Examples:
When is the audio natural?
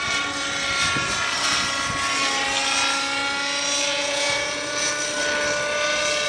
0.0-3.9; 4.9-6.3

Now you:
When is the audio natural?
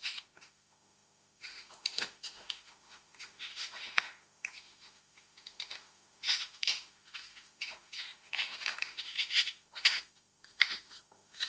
none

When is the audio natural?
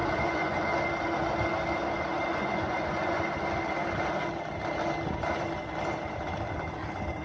0.6-2.3; 3.2-7.2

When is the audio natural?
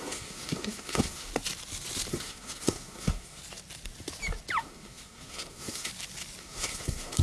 1.3-2.1; 3.4-4.6; 5.9-6.4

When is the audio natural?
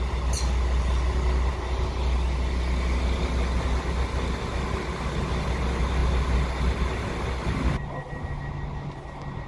0.0-9.5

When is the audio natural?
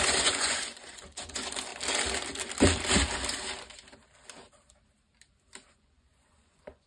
1.7-5.7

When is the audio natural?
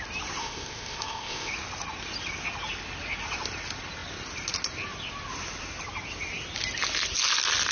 0.0-0.4; 1.5-7.7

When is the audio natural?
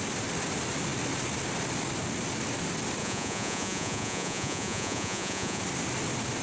0.0-3.0; 5.6-6.4